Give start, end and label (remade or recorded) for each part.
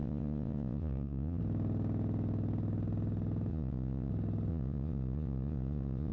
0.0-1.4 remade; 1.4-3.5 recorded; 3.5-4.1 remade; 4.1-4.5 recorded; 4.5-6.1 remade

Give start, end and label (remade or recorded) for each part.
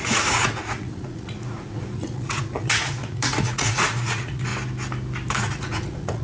0.0-4.5 remade; 4.5-5.4 recorded; 5.4-6.2 remade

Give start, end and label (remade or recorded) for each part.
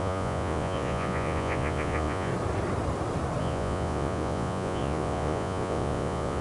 0.0-2.3 remade; 2.3-3.4 recorded; 3.4-6.4 remade